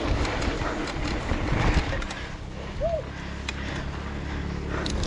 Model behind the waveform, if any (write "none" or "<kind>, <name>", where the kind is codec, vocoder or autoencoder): none